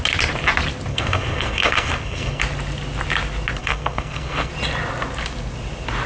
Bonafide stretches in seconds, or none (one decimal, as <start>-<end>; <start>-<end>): 0.0-0.9; 2.4-3.6; 4.5-6.1